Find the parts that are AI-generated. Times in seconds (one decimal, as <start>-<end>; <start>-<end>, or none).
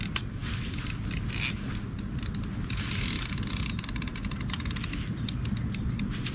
none